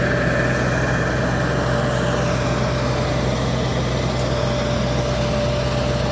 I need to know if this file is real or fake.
real